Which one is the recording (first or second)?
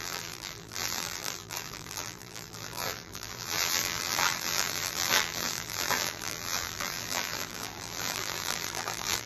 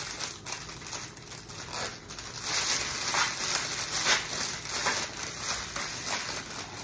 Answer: second